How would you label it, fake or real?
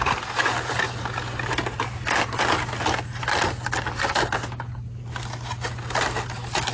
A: real